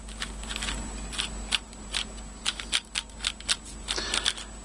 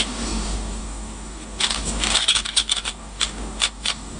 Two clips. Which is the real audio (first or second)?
first